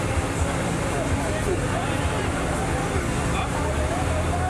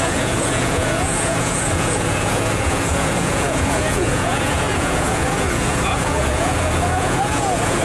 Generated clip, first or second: second